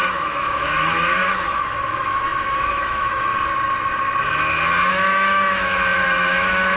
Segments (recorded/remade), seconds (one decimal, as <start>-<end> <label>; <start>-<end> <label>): 0.0-3.3 remade; 3.3-4.9 recorded; 4.9-6.8 remade